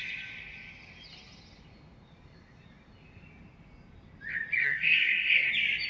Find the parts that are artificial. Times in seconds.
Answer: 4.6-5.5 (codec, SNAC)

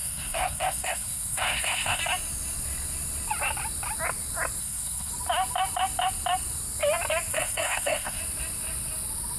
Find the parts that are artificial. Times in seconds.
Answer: 0.0-2.0 (codec, SNAC); 4.6-5.1; 7.3-8.2

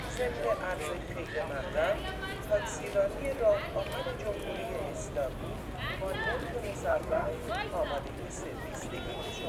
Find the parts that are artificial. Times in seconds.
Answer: 6.9-7.4 (codec, SNAC)

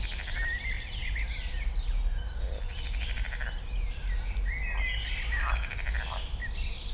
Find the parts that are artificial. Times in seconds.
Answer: none

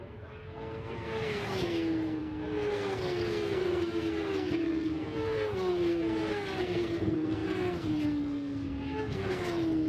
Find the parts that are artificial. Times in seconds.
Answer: 0.0-9.9 (codec, SNAC)

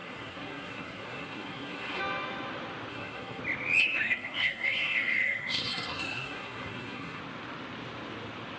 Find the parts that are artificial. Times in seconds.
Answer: 0.0-2.0 (codec, SNAC); 2.9-3.4; 3.8-7.2

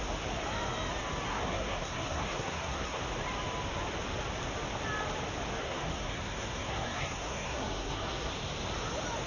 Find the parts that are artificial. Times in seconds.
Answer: 1.3-3.0 (codec, SNAC); 5.6-8.3

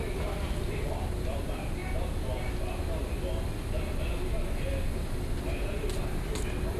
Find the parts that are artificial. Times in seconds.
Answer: none